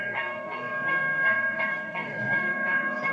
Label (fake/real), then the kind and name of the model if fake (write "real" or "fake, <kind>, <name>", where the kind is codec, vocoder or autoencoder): fake, codec, SNAC